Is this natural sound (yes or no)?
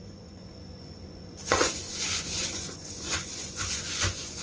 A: no